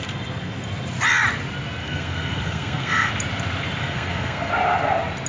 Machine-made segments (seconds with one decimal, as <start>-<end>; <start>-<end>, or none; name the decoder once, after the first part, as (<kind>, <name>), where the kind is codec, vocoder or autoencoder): 1.8-3.1 (codec, SNAC); 3.8-4.5